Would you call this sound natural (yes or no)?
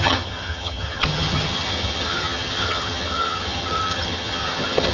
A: no